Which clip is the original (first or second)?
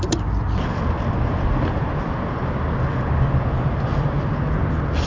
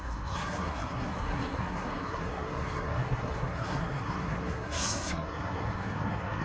first